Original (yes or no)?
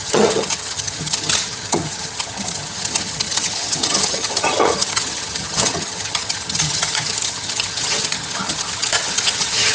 no